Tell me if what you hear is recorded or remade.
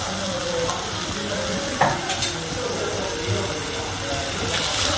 recorded